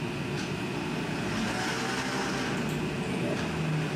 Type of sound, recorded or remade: recorded